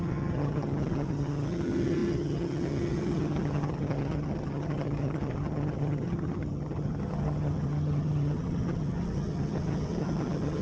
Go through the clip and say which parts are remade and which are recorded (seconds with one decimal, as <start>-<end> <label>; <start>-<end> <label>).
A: 0.0-10.6 remade